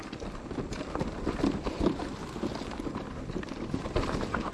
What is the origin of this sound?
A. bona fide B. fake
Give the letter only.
A